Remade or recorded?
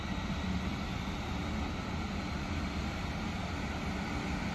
recorded